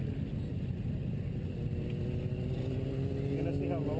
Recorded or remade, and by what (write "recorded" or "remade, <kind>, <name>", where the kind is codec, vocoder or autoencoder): recorded